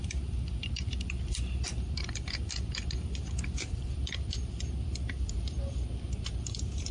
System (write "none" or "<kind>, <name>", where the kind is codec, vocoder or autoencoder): vocoder, BigVGAN v2